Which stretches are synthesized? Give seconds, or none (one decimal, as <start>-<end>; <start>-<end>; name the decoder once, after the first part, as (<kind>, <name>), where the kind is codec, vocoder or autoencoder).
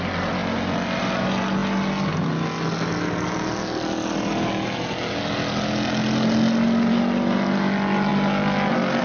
none